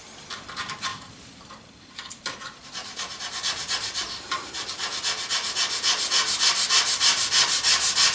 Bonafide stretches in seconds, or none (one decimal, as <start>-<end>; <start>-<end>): 0.0-0.9; 4.5-8.1